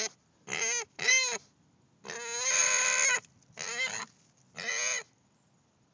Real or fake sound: real